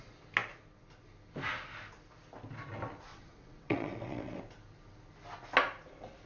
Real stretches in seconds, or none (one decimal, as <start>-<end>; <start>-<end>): 0.0-3.1; 4.4-6.3